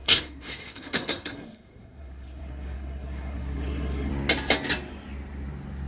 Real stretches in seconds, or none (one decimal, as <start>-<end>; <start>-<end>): 4.1-5.9